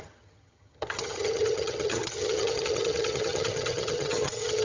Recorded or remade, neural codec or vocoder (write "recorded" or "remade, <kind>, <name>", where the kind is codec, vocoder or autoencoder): remade, vocoder, HiFi-GAN